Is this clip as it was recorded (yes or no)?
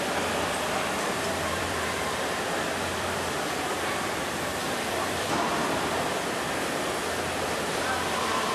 no